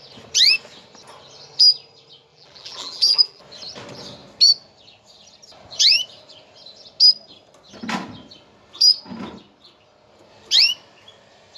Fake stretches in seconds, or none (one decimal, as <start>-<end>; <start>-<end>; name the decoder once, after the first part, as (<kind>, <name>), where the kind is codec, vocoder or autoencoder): 2.3-3.4 (vocoder, BigVGAN v2)